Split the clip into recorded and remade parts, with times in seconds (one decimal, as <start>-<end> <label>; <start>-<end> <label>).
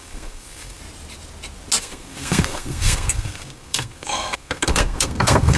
0.0-0.8 remade; 0.8-1.8 recorded; 1.8-5.6 remade